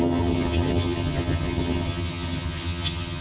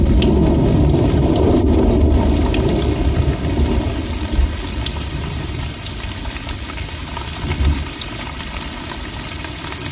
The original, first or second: second